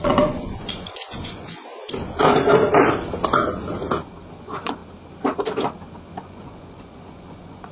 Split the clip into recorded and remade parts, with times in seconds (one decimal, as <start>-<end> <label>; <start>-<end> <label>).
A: 0.0-1.7 remade; 1.7-4.3 recorded; 4.3-4.8 remade; 4.8-6.2 recorded; 6.2-7.7 remade